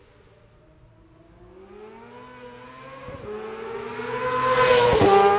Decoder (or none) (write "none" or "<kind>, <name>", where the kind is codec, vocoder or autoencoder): none